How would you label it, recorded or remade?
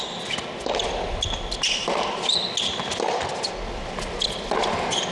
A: recorded